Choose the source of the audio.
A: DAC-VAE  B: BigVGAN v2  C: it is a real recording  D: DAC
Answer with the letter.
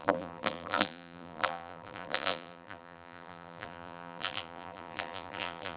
B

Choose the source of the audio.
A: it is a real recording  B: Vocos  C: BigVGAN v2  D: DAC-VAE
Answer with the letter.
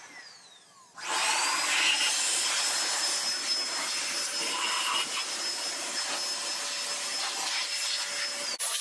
A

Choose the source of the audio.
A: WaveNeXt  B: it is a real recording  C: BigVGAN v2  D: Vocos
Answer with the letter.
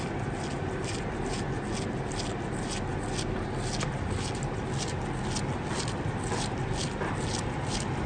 B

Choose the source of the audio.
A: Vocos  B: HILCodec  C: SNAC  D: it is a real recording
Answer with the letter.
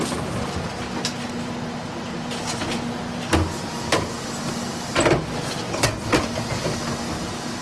D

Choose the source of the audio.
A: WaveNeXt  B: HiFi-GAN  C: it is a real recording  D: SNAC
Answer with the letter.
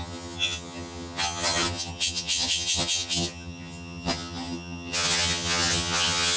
B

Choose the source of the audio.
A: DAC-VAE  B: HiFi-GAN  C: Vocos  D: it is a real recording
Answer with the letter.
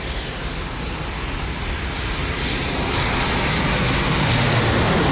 D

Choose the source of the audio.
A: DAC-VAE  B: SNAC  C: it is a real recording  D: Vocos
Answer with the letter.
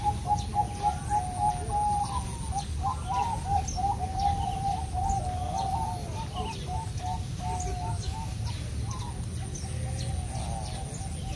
C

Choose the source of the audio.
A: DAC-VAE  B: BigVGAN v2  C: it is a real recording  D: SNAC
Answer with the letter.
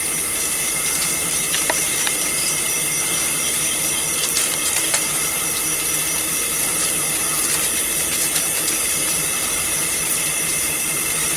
B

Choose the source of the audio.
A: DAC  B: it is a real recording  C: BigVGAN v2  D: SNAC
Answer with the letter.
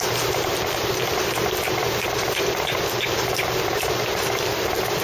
B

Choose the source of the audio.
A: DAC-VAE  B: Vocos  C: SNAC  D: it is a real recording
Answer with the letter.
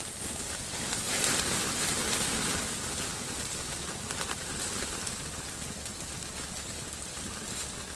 D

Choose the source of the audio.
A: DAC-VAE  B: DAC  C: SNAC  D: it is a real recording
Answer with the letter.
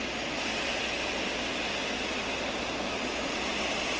D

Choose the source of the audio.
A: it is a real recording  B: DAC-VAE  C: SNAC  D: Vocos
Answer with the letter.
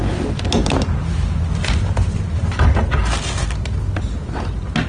A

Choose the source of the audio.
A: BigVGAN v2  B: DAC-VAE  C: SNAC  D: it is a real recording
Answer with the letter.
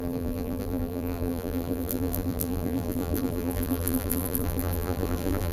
A